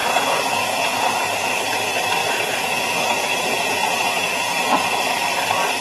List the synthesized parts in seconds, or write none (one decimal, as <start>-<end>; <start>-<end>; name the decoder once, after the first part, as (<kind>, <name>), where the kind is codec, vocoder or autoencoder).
0.0-1.2 (vocoder, Vocos); 2.2-5.1

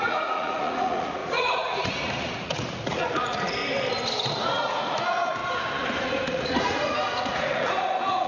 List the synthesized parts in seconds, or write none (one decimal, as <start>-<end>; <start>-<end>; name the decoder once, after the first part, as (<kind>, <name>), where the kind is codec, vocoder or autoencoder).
0.0-3.6 (vocoder, Vocos); 4.4-5.4; 6.0-8.3

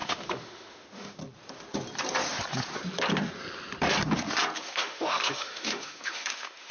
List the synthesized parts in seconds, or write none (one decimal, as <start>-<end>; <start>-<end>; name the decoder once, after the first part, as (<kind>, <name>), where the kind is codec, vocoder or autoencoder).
0.0-1.2 (autoencoder, DAC-VAE); 4.6-6.7

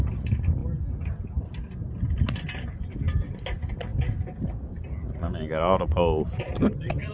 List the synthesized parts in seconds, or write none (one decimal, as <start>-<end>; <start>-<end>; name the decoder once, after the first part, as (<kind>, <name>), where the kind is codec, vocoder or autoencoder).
6.6-7.1 (vocoder, HiFi-GAN)

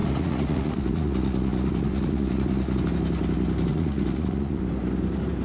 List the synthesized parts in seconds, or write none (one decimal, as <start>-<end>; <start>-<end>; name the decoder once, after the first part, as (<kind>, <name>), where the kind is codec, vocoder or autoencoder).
0.0-2.8 (vocoder, Vocos); 3.7-4.6

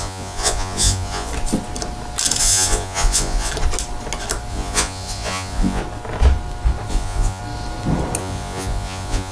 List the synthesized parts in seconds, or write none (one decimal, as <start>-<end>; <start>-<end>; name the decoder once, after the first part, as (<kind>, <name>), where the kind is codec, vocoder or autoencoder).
0.0-1.3 (vocoder, Vocos); 2.4-3.5; 4.5-5.8; 6.9-7.4; 8.2-9.3

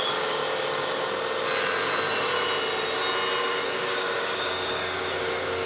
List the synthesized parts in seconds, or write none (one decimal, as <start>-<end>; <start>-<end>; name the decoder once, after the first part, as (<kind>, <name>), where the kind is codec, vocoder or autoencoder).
0.0-0.4 (codec, DAC); 3.4-5.7